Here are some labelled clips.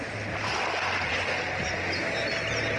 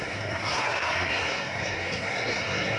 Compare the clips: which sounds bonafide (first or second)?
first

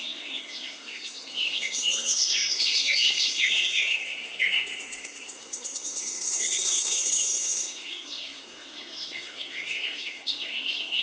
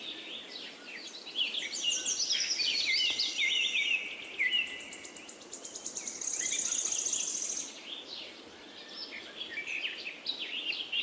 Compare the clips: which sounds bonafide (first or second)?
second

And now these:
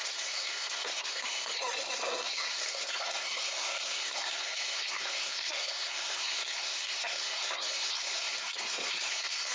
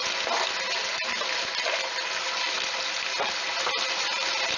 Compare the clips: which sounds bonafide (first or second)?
second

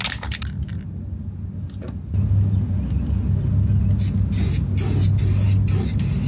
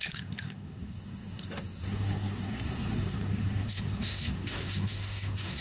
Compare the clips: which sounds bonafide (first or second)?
first